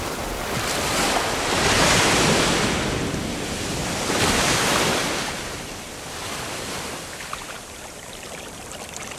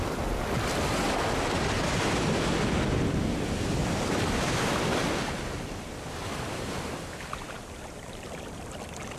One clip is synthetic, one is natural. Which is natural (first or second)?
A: second